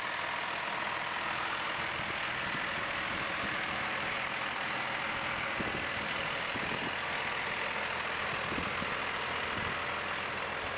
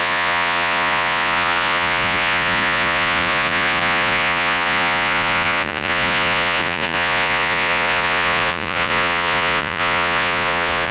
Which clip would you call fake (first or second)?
second